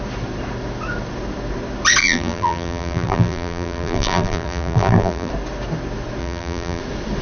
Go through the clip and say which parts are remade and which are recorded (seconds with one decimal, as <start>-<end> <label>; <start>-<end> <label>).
0.0-2.0 recorded; 2.0-5.3 remade; 5.3-6.2 recorded; 6.2-6.8 remade; 6.8-7.2 recorded